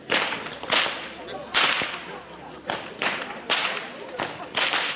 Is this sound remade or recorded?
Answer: recorded